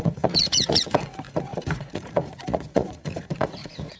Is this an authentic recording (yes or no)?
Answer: no